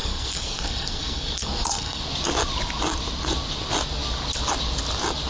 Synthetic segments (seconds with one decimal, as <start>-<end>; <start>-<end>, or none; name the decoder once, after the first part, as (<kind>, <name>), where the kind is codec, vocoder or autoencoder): 0.0-2.0 (codec, SNAC)